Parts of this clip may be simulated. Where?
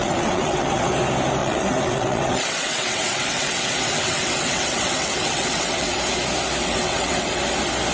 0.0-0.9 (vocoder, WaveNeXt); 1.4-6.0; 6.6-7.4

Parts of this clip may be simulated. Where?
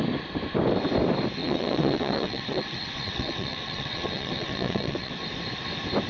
1.4-5.1 (vocoder, WaveNeXt)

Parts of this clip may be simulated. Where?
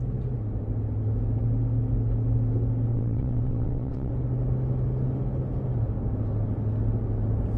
2.9-4.1 (vocoder, WaveNeXt)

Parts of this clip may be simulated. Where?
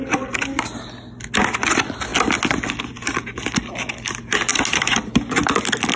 none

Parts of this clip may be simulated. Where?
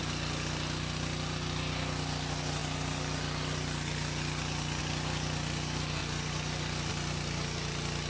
none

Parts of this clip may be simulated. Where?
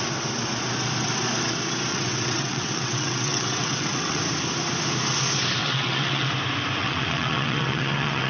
1.9-4.2 (vocoder, WaveNeXt); 5.6-6.3; 6.8-8.3